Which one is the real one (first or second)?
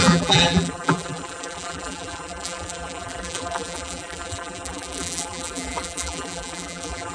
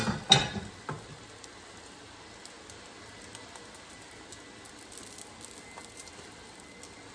second